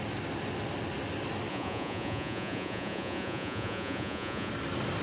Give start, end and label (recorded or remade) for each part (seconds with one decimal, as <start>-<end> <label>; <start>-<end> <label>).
0.0-1.5 recorded; 1.5-4.5 remade; 4.5-5.0 recorded